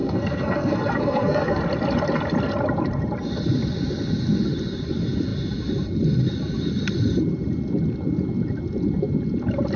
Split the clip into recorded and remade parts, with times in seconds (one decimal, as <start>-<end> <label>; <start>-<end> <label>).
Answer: 0.0-1.6 remade; 1.6-9.8 recorded